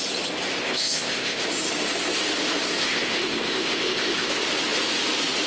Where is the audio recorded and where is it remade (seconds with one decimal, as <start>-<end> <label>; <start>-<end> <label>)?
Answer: 0.0-0.6 recorded; 0.6-1.4 remade; 1.4-2.8 recorded; 2.8-4.3 remade; 4.3-5.5 recorded